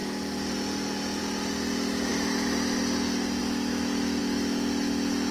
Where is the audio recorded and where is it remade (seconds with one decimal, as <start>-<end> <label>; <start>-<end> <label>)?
0.0-5.3 recorded